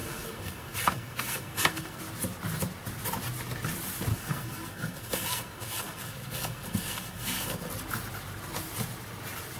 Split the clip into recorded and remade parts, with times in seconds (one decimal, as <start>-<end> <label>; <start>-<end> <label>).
0.0-2.0 remade; 2.0-4.1 recorded; 4.1-7.7 remade; 7.7-9.6 recorded